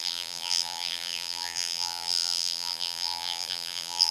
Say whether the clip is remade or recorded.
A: remade